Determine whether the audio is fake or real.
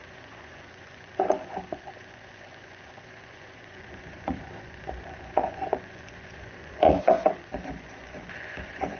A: fake